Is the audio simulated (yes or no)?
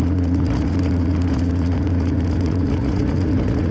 yes